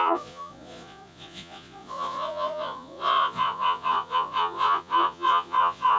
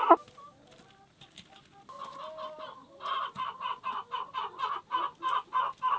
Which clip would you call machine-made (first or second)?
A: first